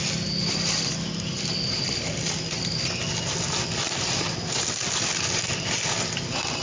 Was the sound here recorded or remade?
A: recorded